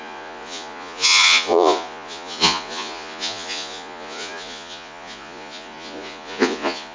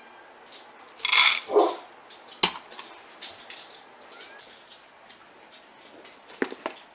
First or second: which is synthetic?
first